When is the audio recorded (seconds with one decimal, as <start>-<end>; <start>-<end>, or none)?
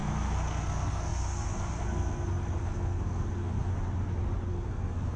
3.7-4.5